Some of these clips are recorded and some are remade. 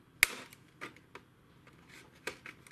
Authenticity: recorded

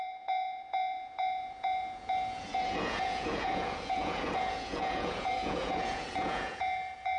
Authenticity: remade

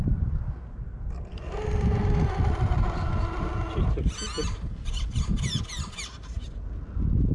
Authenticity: recorded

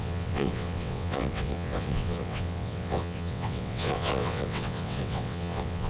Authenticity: remade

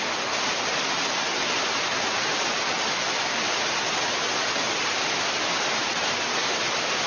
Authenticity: recorded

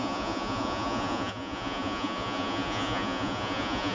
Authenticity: remade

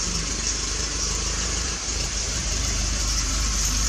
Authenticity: remade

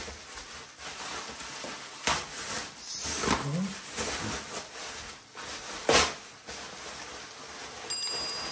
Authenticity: recorded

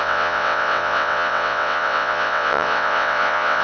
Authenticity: remade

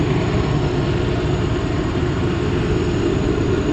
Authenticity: recorded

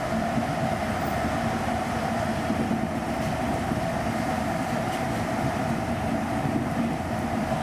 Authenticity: remade